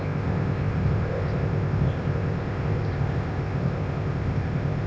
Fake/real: fake